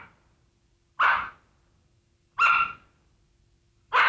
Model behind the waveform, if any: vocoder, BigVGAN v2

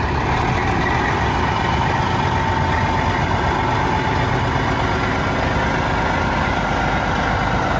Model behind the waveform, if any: none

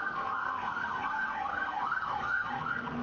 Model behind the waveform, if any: codec, SNAC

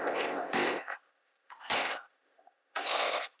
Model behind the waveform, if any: codec, ZipCodec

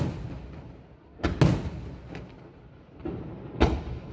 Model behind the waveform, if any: none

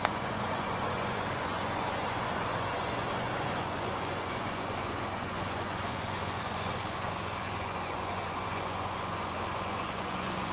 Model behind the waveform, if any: vocoder, Vocos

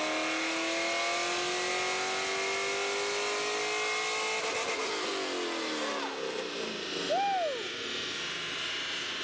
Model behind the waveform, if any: none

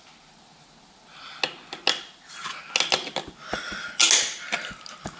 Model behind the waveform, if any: none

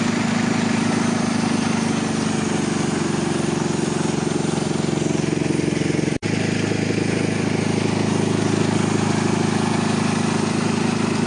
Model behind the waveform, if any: none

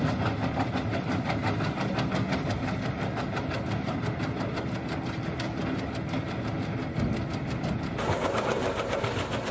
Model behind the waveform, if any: none